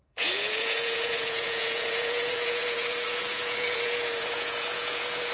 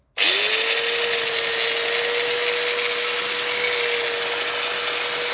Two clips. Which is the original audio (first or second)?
second